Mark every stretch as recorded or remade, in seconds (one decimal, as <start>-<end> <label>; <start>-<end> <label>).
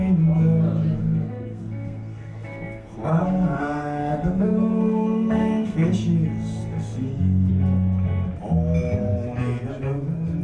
0.0-1.0 recorded; 1.0-5.9 remade; 5.9-6.6 recorded; 6.6-7.5 remade; 7.5-10.4 recorded